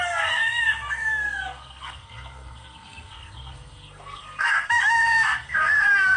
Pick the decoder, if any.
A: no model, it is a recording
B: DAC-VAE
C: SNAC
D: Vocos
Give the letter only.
C